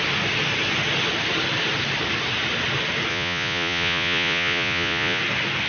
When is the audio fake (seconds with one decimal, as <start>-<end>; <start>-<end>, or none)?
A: 3.1-5.2